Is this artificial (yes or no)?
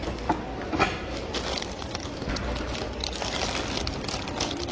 no